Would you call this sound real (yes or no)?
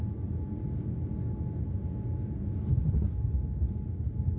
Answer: yes